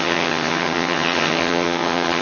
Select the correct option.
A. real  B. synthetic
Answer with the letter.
B